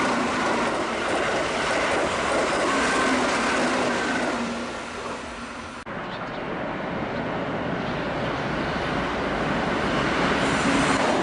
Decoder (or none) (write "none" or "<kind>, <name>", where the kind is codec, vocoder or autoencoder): none